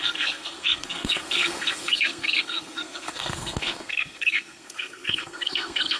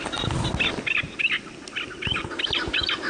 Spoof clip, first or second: first